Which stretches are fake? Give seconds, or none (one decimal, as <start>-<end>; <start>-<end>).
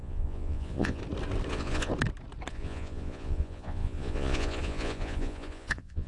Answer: 0.0-1.0; 1.5-1.9; 2.5-6.1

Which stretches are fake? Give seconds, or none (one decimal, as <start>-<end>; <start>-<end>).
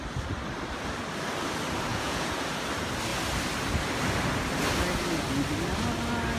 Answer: 1.9-2.5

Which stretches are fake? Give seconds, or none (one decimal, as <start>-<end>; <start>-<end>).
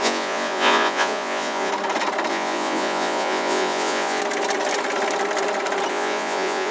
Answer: 0.0-1.7; 2.3-4.2; 5.9-6.7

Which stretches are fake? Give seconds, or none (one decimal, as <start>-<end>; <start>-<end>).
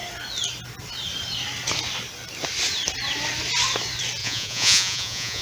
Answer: 4.2-5.4